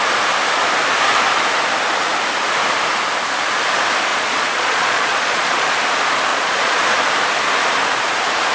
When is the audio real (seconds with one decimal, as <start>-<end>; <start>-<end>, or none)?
0.0-4.1; 5.7-6.3; 6.8-8.5